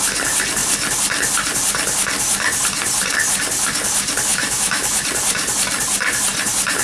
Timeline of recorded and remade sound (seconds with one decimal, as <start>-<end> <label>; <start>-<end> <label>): 0.0-4.3 recorded; 4.3-5.0 remade; 5.0-6.8 recorded